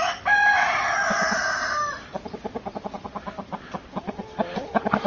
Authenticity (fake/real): real